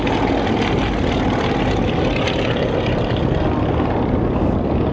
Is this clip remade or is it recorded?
recorded